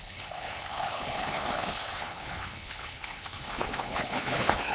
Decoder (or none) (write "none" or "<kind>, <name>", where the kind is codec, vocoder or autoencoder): codec, HILCodec